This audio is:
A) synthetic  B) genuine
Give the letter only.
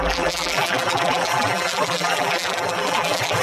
A